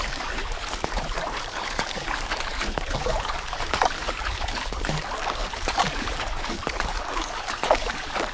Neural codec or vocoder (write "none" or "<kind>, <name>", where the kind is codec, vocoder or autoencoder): codec, DAC